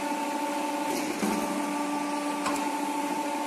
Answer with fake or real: real